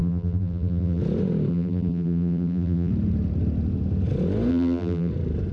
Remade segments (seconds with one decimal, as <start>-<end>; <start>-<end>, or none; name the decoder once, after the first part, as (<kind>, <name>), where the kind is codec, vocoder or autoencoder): 0.0-1.0 (vocoder, BigVGAN v2); 1.5-2.9; 4.5-5.1